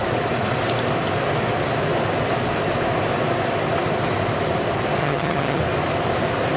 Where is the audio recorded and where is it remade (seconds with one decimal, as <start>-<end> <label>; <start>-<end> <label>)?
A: 0.0-5.0 recorded; 5.0-5.6 remade; 5.6-6.6 recorded